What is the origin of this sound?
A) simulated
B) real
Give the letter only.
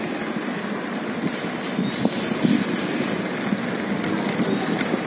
B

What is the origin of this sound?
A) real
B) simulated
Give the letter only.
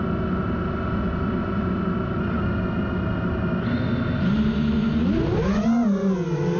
A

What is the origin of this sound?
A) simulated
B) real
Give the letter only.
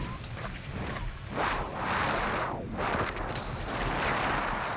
A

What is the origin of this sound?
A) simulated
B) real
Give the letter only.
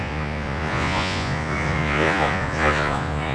A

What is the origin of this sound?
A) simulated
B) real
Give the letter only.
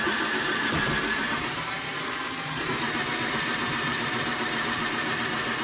A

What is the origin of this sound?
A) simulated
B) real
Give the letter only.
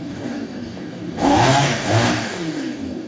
A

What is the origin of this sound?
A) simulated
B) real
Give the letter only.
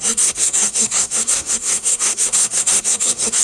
A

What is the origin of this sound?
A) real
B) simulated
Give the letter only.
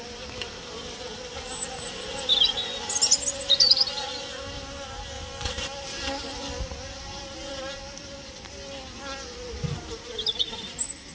A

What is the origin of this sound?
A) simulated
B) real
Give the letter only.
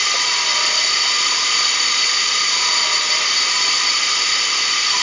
B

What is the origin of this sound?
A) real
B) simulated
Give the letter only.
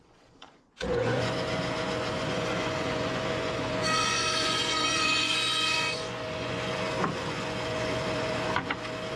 B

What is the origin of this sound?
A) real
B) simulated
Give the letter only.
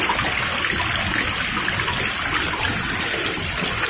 A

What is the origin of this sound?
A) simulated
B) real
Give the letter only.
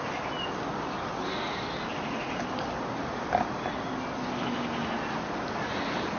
B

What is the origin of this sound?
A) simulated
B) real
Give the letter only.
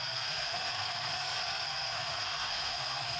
A